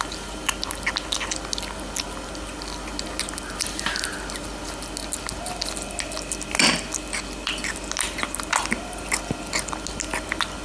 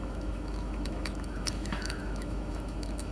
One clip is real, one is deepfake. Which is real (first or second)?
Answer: first